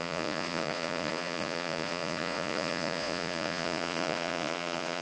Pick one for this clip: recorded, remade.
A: remade